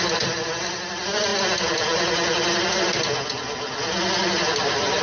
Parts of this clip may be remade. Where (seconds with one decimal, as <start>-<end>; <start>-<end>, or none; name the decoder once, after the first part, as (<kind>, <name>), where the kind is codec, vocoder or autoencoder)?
none